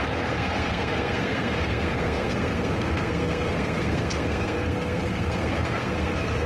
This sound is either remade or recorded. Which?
remade